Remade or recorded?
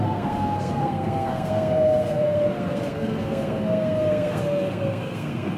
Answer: remade